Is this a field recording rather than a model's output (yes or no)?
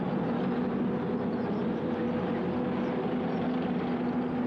yes